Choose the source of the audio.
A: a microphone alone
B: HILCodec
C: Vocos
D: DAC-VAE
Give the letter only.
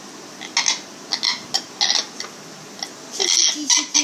A